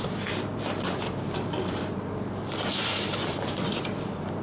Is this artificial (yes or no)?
yes